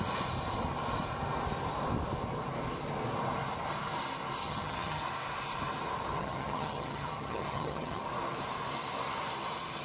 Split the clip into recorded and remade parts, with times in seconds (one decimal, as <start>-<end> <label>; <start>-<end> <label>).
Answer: 0.0-4.4 recorded; 4.4-5.0 remade; 5.0-6.2 recorded; 6.2-8.0 remade; 8.0-9.8 recorded